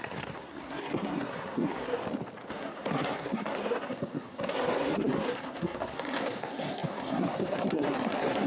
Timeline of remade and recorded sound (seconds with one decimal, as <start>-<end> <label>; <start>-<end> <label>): 0.0-2.0 remade; 2.0-2.5 recorded; 2.5-8.5 remade